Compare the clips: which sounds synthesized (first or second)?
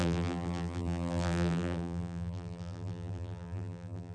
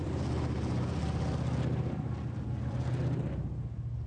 first